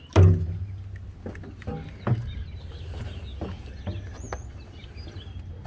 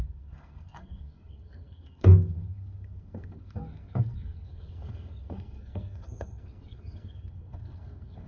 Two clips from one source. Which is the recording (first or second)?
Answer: first